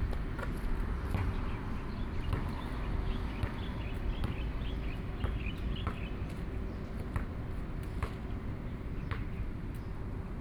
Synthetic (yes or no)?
no